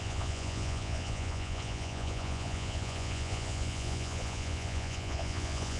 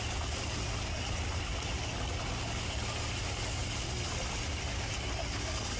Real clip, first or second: second